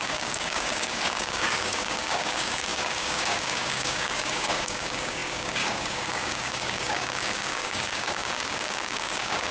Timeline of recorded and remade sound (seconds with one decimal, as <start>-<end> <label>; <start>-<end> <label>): 0.0-9.5 remade